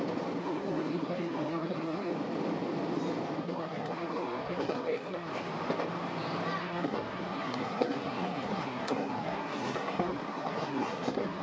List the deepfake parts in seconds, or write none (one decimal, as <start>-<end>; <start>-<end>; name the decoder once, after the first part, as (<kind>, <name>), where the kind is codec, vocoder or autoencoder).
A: 0.4-2.1 (codec, SNAC); 3.4-5.3; 6.6-11.4